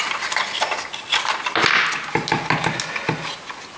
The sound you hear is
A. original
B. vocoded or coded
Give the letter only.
A